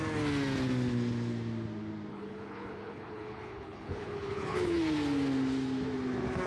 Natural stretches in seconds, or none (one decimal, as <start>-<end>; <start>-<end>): 0.0-2.1; 4.8-6.5